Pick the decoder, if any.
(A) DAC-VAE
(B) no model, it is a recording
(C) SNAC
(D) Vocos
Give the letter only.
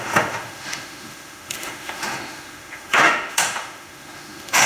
A